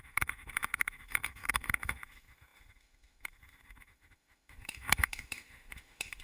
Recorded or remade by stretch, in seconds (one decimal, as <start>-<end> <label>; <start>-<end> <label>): 0.0-6.2 remade